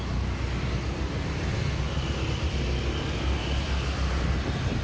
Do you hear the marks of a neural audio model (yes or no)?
no